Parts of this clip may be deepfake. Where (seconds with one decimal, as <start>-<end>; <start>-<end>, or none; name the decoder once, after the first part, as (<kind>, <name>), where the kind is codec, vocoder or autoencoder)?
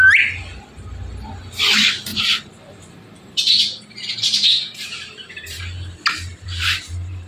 2.1-5.6 (vocoder, BigVGAN v2); 6.3-7.3